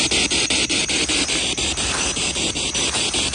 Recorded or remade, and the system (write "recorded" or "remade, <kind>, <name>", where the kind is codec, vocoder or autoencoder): recorded